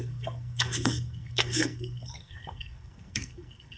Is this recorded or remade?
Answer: remade